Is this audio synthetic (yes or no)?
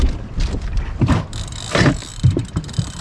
no